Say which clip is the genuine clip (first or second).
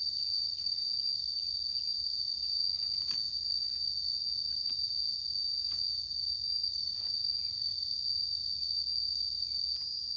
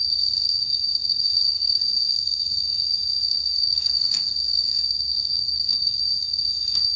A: first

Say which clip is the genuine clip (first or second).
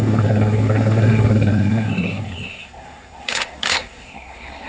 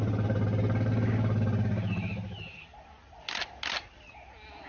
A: second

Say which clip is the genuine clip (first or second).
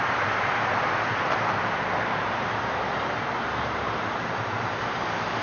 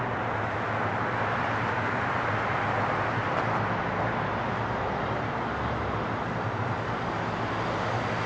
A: second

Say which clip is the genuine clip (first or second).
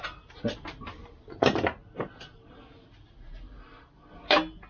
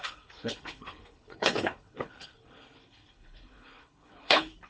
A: first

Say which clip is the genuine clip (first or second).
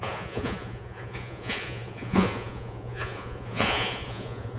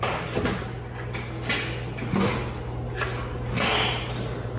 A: second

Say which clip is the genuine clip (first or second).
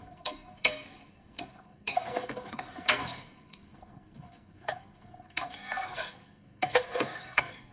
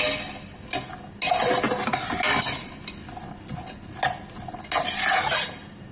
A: second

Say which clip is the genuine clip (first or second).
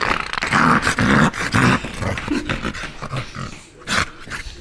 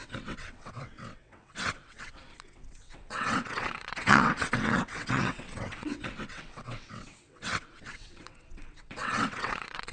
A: first